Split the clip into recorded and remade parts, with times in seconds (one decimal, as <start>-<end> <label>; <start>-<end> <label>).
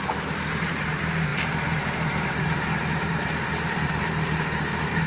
0.0-5.1 remade